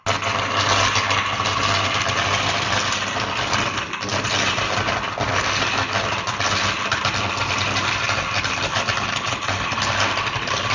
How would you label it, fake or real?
real